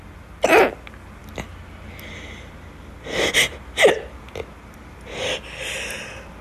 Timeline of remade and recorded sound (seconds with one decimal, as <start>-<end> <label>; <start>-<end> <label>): 0.0-6.4 recorded